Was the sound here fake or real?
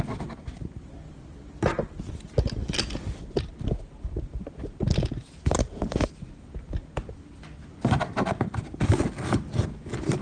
real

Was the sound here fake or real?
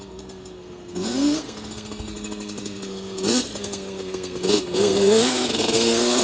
fake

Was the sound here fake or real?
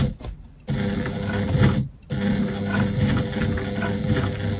real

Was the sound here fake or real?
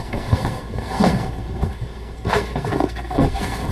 fake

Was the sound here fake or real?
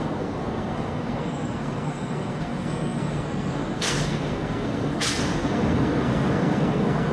fake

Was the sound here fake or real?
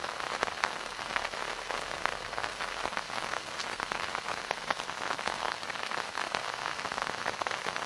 fake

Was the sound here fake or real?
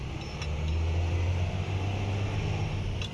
real